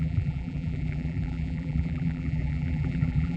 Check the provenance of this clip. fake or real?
fake